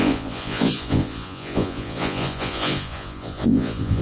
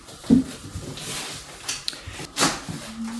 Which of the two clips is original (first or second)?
second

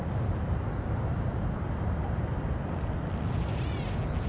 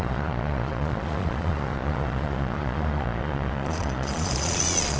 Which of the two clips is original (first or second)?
first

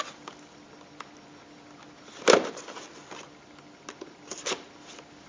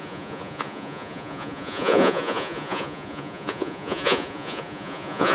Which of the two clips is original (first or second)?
first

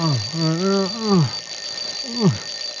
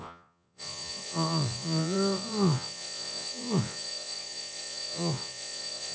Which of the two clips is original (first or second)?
first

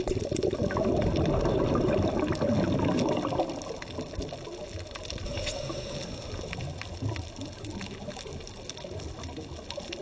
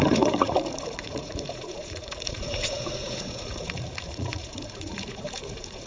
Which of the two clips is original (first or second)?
first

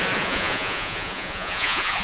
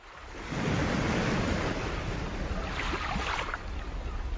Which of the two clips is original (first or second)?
second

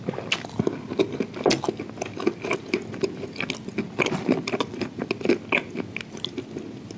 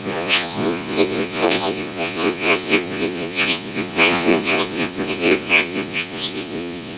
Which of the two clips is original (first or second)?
first